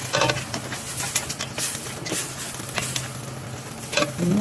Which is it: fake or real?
real